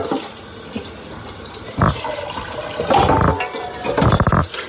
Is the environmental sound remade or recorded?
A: recorded